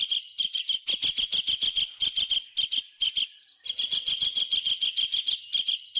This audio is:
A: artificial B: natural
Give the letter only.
B